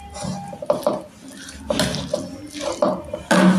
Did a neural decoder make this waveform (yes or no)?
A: no